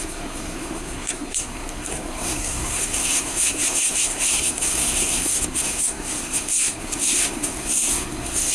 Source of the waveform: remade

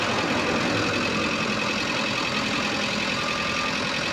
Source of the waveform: recorded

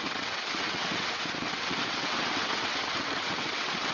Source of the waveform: remade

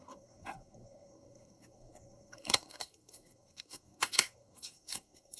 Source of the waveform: remade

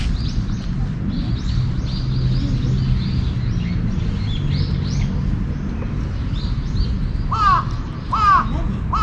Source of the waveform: recorded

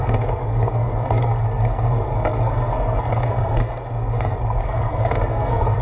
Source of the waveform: remade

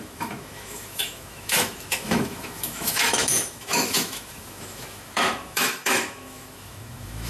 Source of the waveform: remade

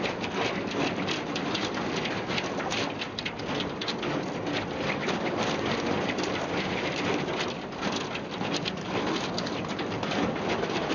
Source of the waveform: recorded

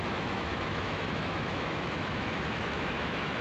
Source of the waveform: remade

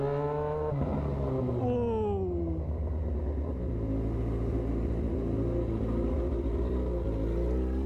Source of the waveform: recorded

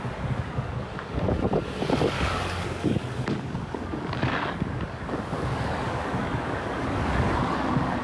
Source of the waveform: remade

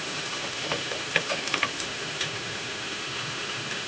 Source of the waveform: remade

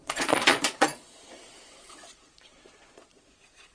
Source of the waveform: remade